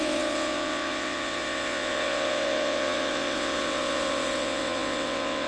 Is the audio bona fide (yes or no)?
no